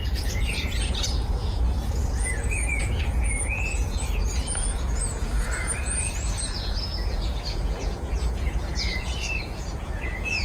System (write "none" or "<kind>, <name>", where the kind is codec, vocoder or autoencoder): vocoder, Vocos